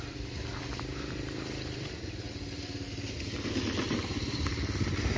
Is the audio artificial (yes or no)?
yes